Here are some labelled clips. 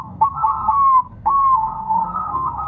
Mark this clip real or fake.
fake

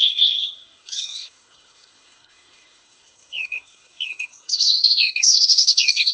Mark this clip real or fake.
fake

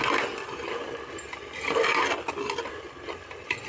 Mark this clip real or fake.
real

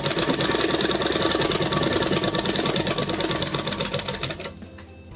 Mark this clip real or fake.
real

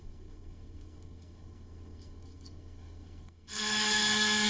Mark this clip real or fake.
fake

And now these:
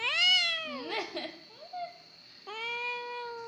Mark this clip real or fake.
real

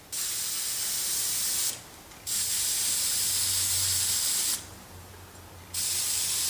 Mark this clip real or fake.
real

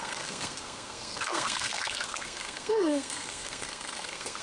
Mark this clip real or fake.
fake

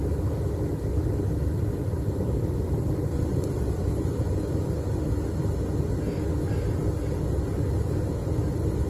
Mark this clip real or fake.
real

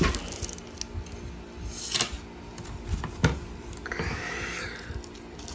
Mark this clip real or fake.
real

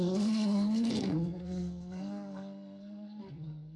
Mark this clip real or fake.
fake